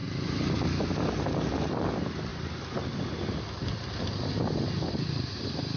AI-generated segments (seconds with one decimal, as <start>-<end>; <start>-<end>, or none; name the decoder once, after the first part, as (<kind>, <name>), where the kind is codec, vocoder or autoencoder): none